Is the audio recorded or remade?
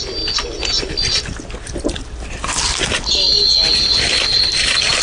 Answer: recorded